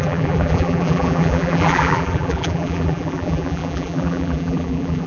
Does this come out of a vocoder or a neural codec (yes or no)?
yes